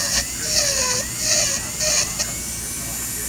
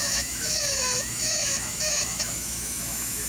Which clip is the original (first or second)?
first